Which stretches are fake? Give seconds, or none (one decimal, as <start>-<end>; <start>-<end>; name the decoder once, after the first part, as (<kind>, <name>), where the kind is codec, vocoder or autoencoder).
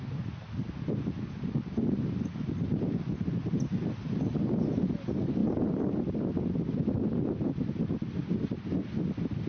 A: none